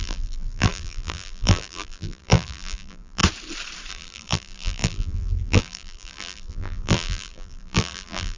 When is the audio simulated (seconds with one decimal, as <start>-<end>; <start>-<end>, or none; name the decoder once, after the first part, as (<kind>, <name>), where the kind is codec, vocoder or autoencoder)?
0.0-3.2 (vocoder, BigVGAN v2); 3.9-8.4